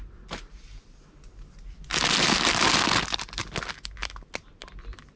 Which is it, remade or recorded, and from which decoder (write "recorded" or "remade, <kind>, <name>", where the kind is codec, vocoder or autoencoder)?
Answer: recorded